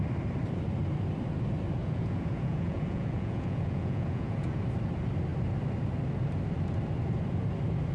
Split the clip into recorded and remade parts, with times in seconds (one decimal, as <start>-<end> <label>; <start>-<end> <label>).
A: 0.0-1.8 recorded; 1.8-4.6 remade; 4.6-7.9 recorded